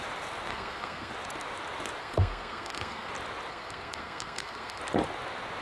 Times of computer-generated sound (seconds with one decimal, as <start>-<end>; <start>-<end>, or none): 0.5-1.1; 2.0-3.1; 3.5-4.8